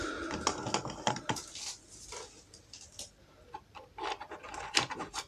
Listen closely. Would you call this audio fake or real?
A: real